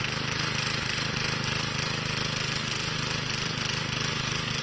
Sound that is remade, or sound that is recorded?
recorded